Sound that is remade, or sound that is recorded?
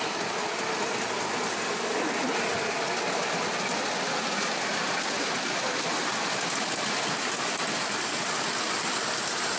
recorded